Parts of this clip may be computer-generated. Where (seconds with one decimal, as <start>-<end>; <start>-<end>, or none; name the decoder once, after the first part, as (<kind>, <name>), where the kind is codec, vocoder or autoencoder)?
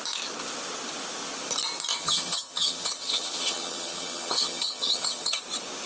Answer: 1.9-5.4 (vocoder, HiFi-GAN)